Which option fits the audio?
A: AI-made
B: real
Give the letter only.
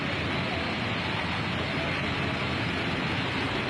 B